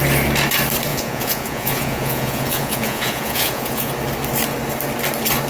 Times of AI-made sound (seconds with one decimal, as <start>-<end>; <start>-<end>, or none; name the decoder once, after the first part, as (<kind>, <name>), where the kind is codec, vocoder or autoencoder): 0.9-3.9 (vocoder, Vocos)